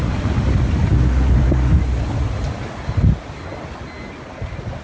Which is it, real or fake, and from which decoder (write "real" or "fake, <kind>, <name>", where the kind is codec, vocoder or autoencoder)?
real